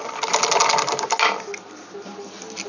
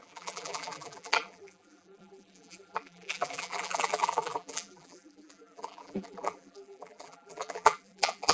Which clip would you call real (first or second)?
first